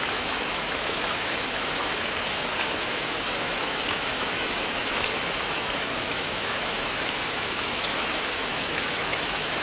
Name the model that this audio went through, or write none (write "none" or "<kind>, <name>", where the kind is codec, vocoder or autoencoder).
autoencoder, DAC-VAE